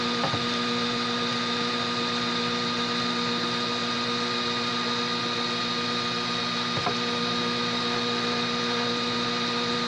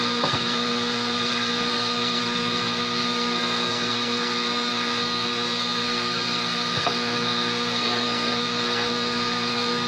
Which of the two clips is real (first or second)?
first